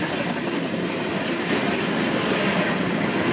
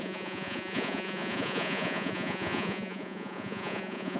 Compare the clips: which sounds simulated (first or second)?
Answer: second